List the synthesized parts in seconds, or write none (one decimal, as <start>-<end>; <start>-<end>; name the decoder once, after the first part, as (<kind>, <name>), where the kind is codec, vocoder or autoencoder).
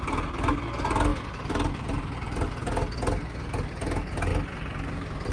none